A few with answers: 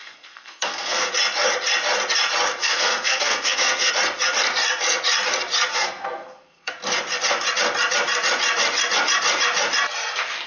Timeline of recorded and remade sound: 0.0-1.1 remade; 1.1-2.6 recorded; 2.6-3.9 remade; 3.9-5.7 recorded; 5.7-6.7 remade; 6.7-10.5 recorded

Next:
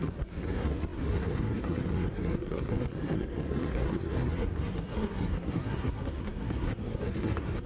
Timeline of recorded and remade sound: 0.0-7.7 remade